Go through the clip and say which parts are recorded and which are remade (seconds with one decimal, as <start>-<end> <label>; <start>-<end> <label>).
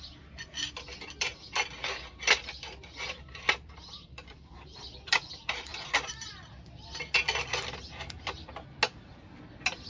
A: 0.0-1.3 remade; 1.3-3.2 recorded; 3.2-5.7 remade; 5.7-9.9 recorded